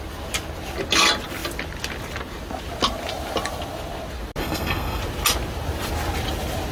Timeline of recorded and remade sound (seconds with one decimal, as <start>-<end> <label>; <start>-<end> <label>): 0.0-4.4 recorded; 4.4-5.0 remade; 5.0-6.7 recorded

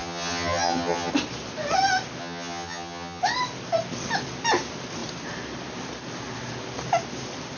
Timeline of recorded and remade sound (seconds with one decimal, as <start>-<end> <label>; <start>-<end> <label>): 0.0-1.1 remade; 1.1-2.2 recorded; 2.2-3.2 remade; 3.2-7.6 recorded

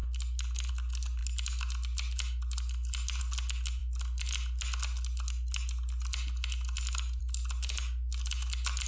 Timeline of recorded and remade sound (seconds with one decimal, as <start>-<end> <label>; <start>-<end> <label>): 0.0-8.9 recorded